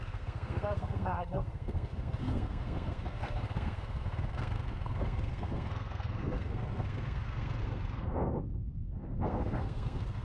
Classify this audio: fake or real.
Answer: fake